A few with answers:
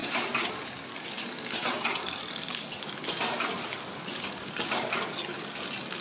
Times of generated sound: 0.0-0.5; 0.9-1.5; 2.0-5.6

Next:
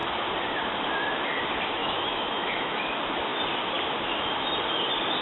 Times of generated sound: 1.8-2.8

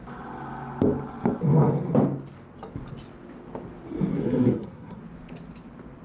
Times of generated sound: 4.1-5.0

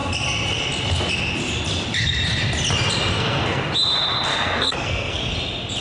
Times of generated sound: 3.1-3.6; 4.3-5.2

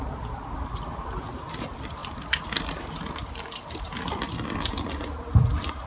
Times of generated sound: none